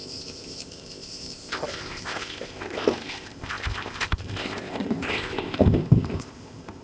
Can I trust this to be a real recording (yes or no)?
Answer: no